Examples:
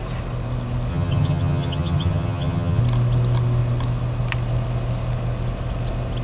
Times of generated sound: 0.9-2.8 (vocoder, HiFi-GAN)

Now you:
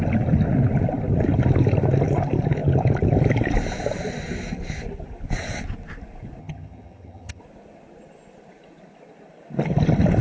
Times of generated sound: 6.4-7.4 (vocoder, HiFi-GAN)

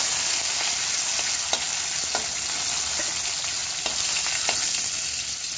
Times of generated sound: none